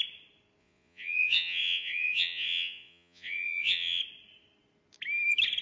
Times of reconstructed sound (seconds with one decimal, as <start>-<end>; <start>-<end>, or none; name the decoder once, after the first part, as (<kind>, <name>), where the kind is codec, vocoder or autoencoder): 0.6-4.0 (vocoder, Vocos)